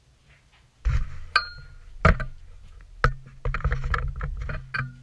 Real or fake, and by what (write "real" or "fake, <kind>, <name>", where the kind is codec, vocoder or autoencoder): real